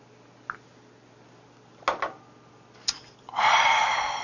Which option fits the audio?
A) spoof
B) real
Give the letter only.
B